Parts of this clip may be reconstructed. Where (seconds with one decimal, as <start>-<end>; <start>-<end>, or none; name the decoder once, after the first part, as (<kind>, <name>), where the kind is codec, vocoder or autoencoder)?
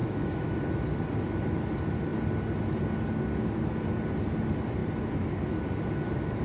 0.0-0.6 (autoencoder, DAC-VAE)